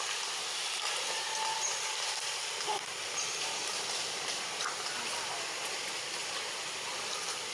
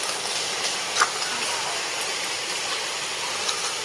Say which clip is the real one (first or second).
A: second